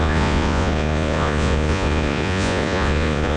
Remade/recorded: remade